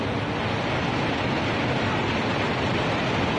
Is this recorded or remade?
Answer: recorded